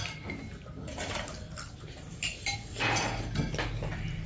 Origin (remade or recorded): recorded